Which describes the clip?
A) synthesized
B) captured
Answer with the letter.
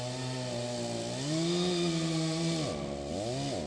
B